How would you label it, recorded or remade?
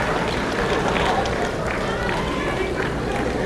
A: recorded